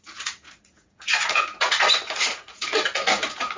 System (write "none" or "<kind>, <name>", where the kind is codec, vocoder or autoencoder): vocoder, Vocos